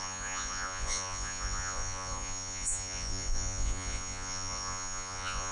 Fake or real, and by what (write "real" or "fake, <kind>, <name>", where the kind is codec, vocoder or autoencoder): fake, vocoder, Vocos